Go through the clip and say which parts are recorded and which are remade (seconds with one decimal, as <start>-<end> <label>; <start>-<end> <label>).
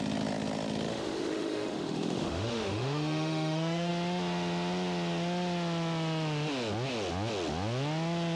0.0-0.9 recorded; 0.9-3.9 remade; 3.9-8.4 recorded